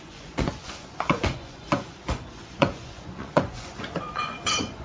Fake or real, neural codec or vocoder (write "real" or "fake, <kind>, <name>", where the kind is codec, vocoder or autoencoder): fake, vocoder, Vocos